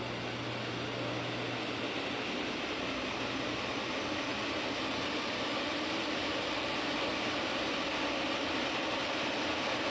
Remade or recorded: recorded